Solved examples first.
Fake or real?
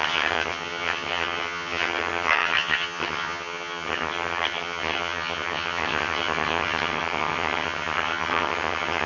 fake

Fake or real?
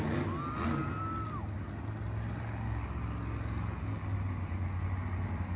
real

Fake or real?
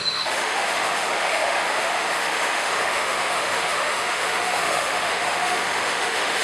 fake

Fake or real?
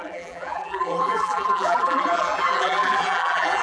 fake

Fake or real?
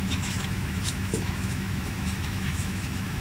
fake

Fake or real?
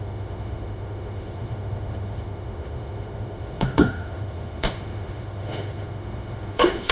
fake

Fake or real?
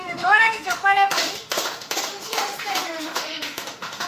fake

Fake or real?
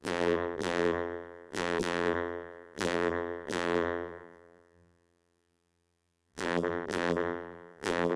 fake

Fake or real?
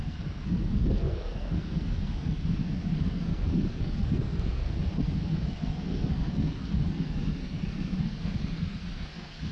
fake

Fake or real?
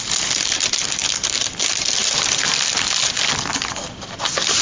real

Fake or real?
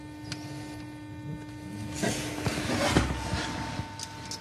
real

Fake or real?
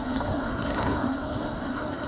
fake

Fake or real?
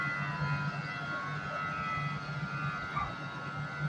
real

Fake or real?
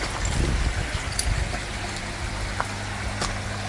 real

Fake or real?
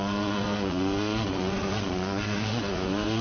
fake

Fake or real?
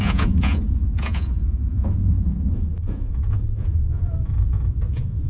fake